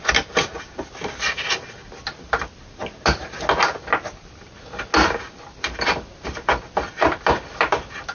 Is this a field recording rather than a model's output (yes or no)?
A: yes